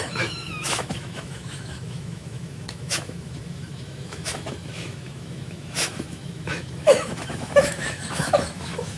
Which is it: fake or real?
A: fake